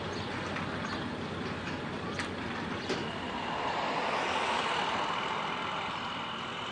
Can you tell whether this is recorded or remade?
recorded